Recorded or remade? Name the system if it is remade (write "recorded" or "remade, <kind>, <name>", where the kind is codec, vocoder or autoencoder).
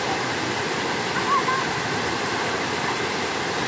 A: recorded